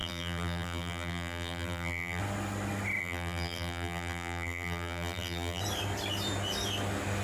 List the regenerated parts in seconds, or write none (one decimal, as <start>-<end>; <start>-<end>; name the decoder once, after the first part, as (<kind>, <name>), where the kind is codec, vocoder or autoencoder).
0.0-2.2 (vocoder, BigVGAN v2); 3.0-5.6